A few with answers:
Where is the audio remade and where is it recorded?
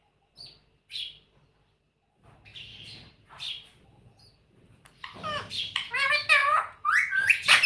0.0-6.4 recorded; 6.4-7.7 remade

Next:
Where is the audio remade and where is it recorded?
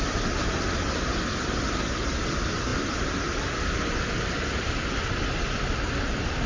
0.0-6.5 recorded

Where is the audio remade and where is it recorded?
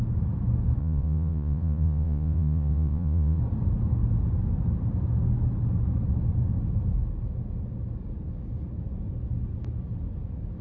0.0-0.8 recorded; 0.8-3.4 remade; 3.4-10.6 recorded